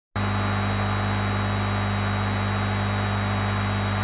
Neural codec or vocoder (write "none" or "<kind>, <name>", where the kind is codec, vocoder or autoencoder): none